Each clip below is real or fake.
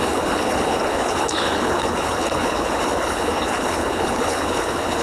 fake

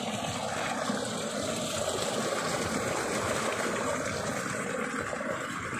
real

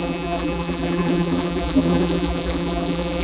fake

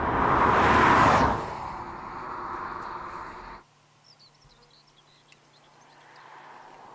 real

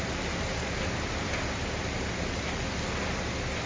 real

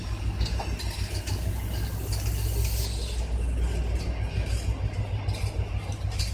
real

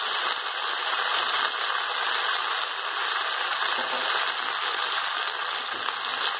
real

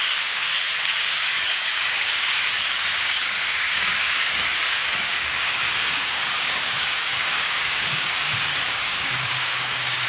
fake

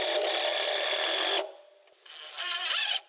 real